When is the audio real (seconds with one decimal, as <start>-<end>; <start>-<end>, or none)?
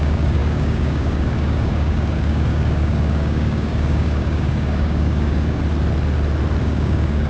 5.6-6.6